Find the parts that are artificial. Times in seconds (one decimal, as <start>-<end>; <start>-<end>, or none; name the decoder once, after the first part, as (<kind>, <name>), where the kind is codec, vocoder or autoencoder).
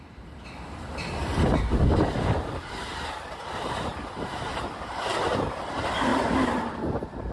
0.0-2.9 (vocoder, BigVGAN v2); 4.3-7.3